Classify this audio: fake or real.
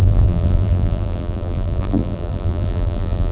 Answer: fake